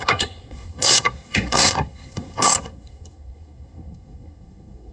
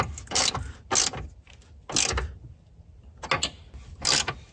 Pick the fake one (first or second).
first